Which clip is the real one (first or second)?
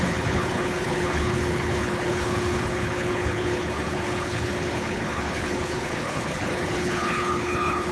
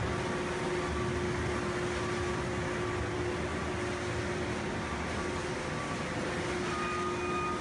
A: second